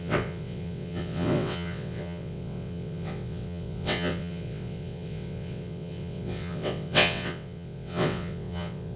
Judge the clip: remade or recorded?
remade